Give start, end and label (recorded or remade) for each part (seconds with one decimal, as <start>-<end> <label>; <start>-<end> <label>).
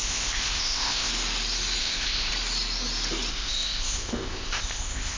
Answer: 0.0-1.1 remade; 1.1-1.8 recorded; 1.8-2.3 remade; 2.3-3.3 recorded; 3.3-5.2 remade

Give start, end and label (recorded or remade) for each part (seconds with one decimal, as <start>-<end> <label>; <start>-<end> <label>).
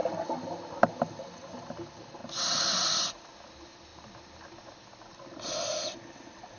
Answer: 0.0-6.6 recorded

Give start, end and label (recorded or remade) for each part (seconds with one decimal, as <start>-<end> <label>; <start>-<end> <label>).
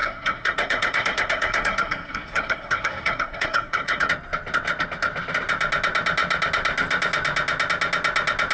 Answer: 0.0-4.1 remade; 4.1-8.5 recorded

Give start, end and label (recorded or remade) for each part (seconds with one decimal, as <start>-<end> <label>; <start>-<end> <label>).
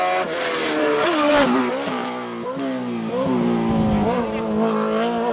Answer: 0.0-0.6 recorded; 0.6-1.6 remade; 1.6-5.3 recorded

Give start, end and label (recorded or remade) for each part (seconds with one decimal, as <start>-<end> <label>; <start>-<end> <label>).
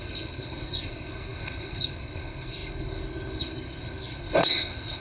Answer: 0.0-5.0 remade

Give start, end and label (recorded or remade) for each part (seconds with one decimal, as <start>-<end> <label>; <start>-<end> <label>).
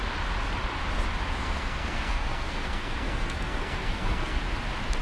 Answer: 0.0-1.4 recorded; 1.4-4.4 remade; 4.4-5.0 recorded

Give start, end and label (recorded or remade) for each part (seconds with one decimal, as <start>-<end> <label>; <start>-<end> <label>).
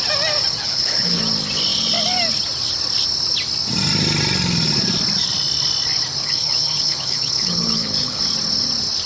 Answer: 0.0-0.6 recorded; 0.6-1.2 remade; 1.2-6.2 recorded; 6.2-8.2 remade; 8.2-9.1 recorded